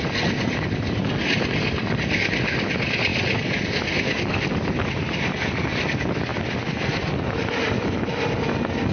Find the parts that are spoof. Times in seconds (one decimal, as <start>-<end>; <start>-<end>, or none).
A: none

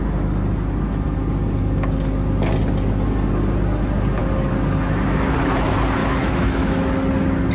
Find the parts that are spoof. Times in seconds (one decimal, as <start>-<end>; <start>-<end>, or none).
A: 6.0-6.9

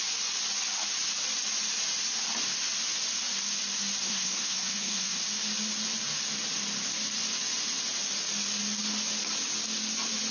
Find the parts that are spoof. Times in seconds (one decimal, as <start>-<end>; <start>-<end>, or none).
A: 4.0-5.2

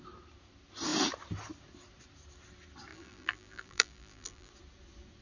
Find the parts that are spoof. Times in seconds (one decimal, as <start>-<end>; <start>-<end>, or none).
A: 2.9-4.5

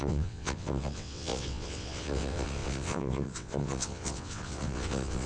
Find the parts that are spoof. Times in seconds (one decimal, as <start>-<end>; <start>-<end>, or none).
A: 0.0-5.3

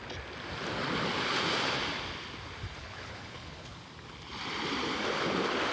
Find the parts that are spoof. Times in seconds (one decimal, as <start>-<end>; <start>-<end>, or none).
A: 2.8-3.8

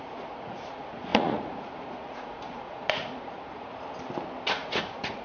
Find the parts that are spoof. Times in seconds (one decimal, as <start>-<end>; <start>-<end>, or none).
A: 0.0-3.7; 4.5-5.2